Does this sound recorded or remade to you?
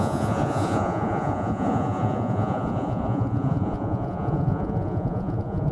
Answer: remade